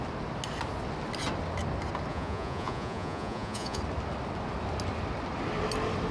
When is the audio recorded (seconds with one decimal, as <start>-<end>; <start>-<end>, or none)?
0.0-2.1; 3.8-6.1